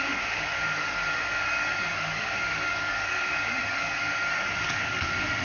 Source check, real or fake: fake